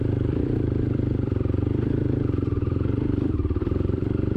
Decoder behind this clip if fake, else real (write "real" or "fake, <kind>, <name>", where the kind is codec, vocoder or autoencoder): fake, vocoder, BigVGAN v2